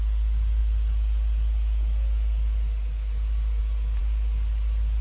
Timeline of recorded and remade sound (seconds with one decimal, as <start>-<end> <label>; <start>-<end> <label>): 0.0-5.0 recorded